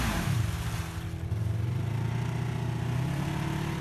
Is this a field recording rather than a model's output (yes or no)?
yes